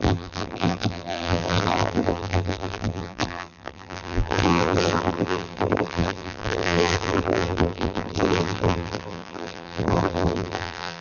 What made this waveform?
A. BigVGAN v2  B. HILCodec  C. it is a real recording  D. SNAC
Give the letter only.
A